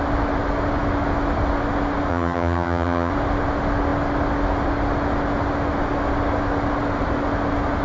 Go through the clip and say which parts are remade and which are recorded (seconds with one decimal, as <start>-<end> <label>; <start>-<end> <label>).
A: 0.0-2.1 recorded; 2.1-3.1 remade; 3.1-7.8 recorded